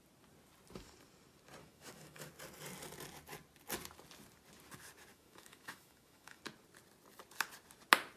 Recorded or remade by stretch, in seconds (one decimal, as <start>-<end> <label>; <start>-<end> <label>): 0.0-1.6 recorded; 1.6-2.3 remade; 2.3-5.1 recorded; 5.1-6.4 remade; 6.4-8.2 recorded